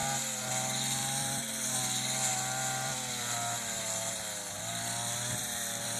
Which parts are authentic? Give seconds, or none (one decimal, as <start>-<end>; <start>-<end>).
0.5-1.0; 1.8-2.3